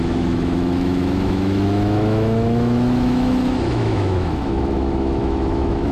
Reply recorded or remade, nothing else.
remade